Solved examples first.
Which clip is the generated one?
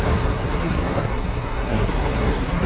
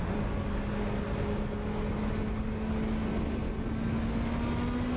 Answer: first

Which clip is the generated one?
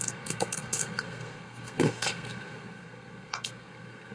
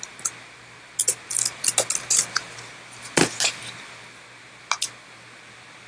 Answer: first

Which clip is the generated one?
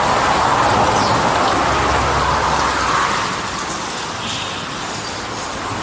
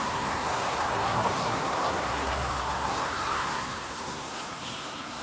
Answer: second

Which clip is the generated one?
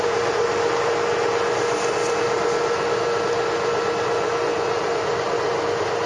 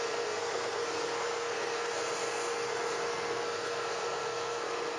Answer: second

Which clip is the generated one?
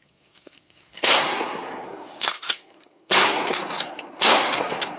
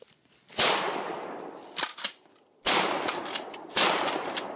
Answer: first